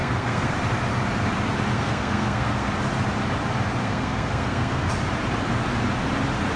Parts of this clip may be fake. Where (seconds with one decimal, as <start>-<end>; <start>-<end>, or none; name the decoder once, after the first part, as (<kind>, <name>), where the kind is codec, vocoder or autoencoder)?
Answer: 0.0-0.5 (codec, SNAC); 1.7-2.7; 3.8-4.9